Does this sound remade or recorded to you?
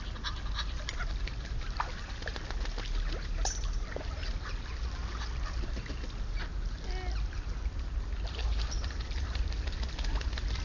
recorded